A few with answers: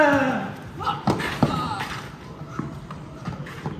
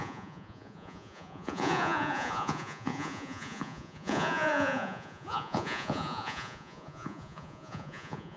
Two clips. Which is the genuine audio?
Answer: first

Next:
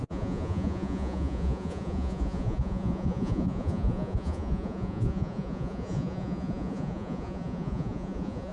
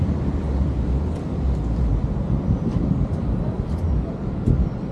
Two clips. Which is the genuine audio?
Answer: second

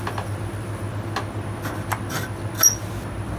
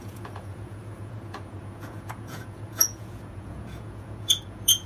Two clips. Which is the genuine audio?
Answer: first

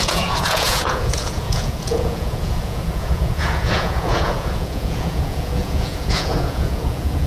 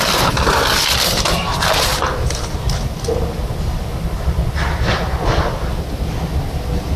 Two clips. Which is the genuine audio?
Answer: second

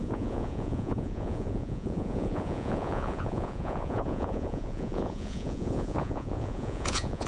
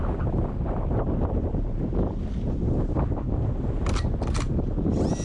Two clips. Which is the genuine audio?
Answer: second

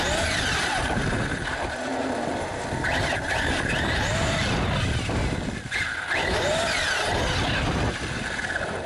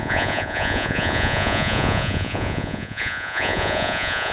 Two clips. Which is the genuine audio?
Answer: first